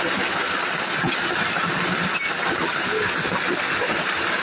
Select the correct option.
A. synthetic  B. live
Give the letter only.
B